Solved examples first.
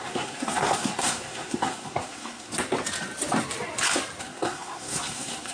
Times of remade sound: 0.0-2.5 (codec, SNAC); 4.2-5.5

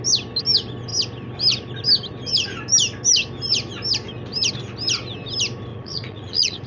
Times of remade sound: 5.7-6.7 (vocoder, Vocos)